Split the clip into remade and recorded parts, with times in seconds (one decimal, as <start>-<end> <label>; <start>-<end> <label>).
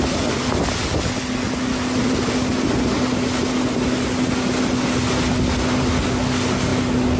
0.0-7.2 recorded